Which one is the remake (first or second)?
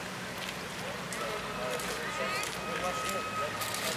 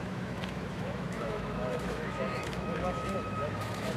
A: second